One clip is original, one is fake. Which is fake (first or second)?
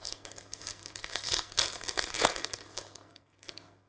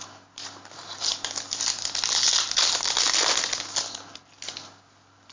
first